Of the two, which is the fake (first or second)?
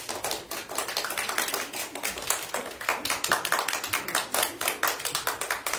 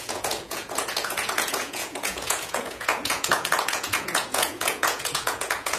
second